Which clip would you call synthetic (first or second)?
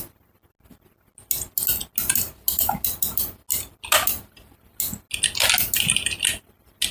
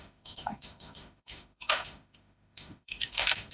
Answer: second